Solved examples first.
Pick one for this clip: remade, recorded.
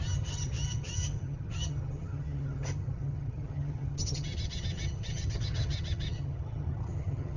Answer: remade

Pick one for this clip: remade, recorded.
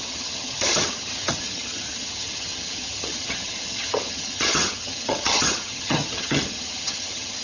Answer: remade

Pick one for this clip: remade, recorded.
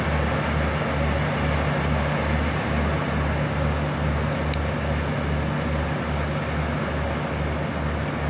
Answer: recorded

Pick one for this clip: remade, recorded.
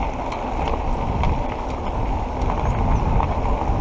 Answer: recorded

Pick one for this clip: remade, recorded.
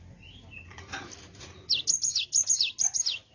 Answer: recorded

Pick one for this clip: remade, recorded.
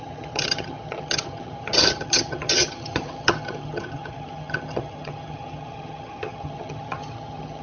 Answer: remade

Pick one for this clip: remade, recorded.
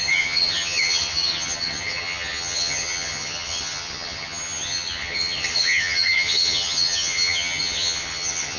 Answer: remade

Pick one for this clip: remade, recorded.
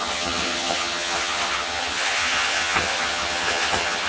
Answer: remade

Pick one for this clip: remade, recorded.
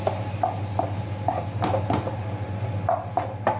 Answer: recorded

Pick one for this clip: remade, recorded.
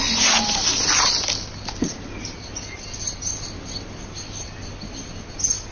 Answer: recorded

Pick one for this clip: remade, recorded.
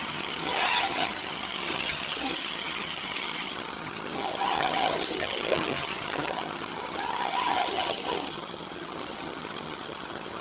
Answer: remade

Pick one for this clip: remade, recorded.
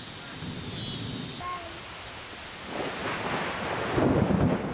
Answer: recorded